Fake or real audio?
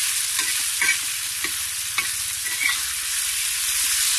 real